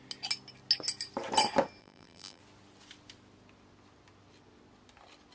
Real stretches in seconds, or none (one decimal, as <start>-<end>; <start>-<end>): 0.0-1.8; 2.4-5.3